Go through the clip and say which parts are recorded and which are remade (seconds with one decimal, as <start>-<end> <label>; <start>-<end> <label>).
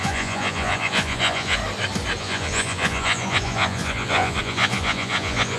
0.0-1.6 remade; 1.6-2.2 recorded; 2.2-5.6 remade